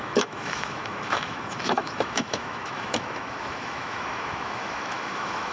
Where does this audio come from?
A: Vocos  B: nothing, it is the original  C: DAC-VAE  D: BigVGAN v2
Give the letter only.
C